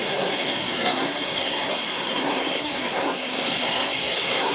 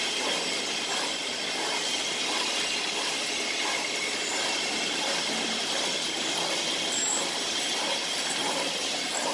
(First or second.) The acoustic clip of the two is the second